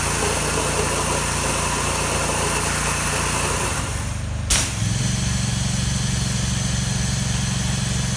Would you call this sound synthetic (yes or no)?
no